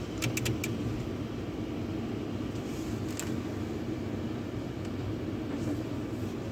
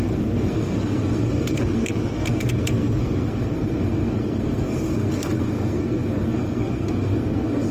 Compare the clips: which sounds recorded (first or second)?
first